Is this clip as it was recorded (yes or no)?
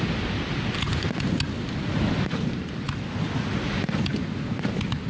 yes